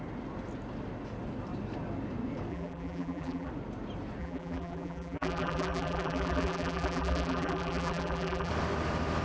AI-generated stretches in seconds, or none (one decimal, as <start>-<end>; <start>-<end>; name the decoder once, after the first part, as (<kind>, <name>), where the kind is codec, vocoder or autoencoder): 2.5-3.5 (vocoder, BigVGAN v2); 4.2-8.5